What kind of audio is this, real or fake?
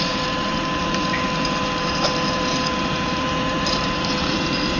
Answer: fake